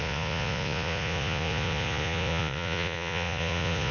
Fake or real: fake